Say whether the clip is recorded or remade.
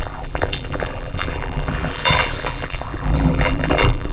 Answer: remade